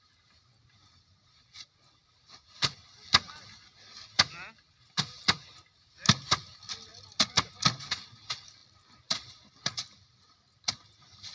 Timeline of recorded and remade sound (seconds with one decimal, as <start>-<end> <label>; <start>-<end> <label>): 0.0-11.3 recorded